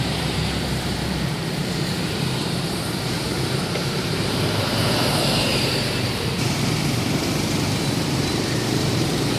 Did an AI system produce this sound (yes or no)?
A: yes